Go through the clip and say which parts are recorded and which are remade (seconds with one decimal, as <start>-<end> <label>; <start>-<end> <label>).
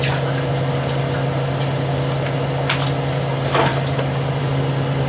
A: 0.0-5.1 recorded